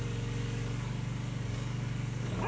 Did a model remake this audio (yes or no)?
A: yes